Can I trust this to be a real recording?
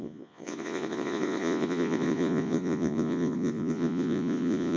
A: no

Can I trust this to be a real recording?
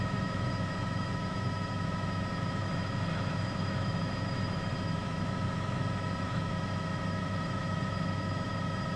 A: no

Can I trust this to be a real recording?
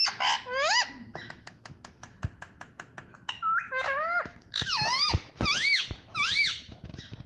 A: no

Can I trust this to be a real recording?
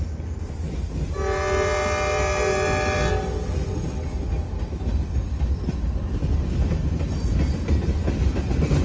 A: yes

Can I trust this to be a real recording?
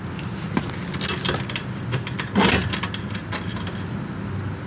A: yes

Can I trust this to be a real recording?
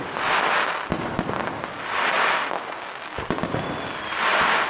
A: yes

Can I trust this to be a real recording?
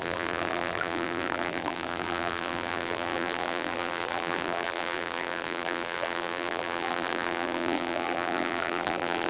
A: no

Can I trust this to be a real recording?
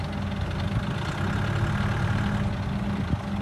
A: yes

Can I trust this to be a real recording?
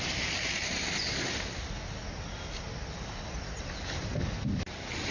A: yes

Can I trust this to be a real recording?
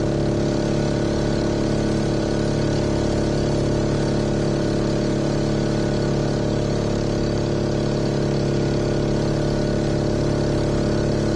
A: yes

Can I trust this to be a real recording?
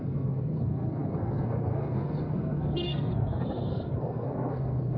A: no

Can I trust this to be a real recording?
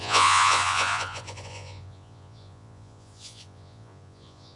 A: no